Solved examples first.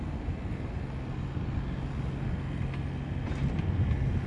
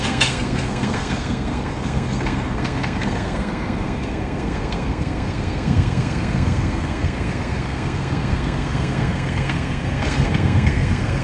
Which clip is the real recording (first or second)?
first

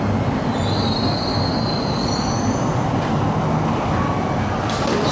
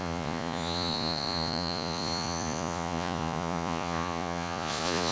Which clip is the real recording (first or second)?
first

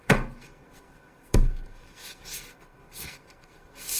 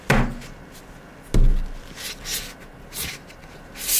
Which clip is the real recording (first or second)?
second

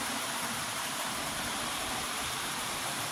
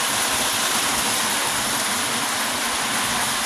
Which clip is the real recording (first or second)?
second